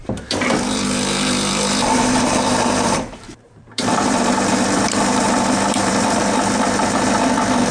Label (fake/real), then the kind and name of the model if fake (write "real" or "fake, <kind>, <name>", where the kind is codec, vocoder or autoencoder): fake, vocoder, BigVGAN v2